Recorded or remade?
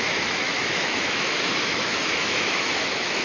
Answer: remade